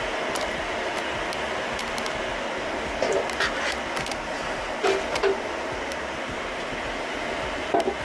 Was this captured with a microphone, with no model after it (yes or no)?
yes